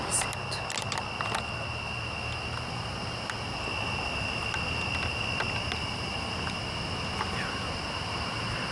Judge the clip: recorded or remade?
recorded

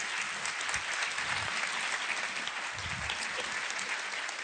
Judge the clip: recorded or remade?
recorded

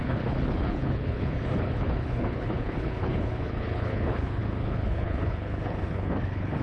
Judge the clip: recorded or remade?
remade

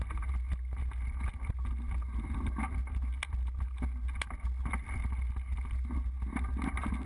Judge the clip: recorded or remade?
recorded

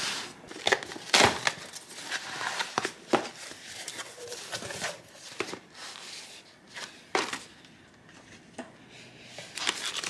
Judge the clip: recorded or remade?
recorded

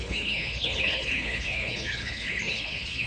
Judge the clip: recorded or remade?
remade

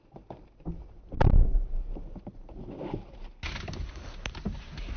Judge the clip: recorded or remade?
recorded